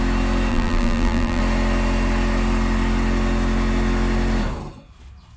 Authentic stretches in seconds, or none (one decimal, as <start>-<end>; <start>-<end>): 0.0-0.5; 1.4-5.4

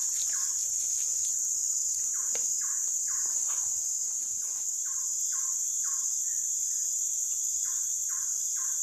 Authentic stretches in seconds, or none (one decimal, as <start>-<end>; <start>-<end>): 0.0-0.6; 1.4-1.8; 6.2-8.8

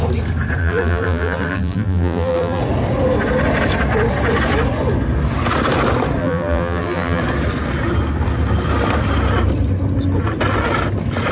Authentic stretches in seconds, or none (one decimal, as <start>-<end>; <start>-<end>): 0.0-0.6; 2.6-6.2; 7.2-11.3